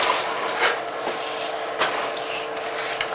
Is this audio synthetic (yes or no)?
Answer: no